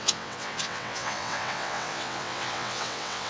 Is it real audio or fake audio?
fake